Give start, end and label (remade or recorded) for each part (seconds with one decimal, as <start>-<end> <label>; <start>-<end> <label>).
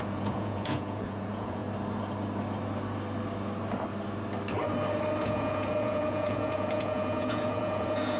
0.0-1.6 remade; 1.6-5.2 recorded; 5.2-8.2 remade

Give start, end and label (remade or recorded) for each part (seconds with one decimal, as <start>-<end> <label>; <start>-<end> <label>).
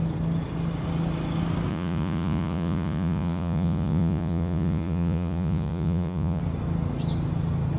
0.0-1.7 recorded; 1.7-6.4 remade; 6.4-7.8 recorded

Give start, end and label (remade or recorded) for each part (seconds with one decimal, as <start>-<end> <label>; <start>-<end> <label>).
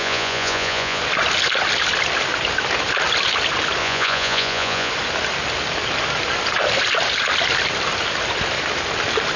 0.0-1.0 remade; 1.0-3.8 recorded; 3.8-4.9 remade; 4.9-9.4 recorded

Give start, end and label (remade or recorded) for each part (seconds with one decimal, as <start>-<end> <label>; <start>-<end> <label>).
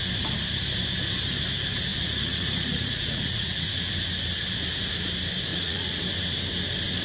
0.0-1.9 recorded; 1.9-3.9 remade; 3.9-5.5 recorded; 5.5-6.0 remade; 6.0-7.0 recorded